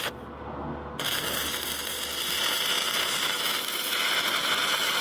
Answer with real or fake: real